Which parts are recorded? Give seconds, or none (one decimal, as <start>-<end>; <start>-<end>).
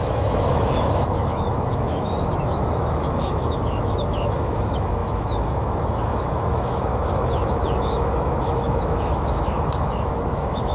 none